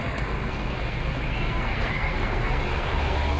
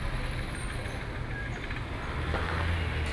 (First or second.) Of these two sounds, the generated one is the first